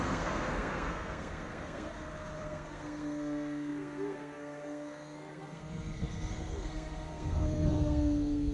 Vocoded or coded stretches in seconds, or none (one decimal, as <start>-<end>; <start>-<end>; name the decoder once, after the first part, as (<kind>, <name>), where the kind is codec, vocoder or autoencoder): 0.0-1.9 (codec, SNAC); 2.4-8.5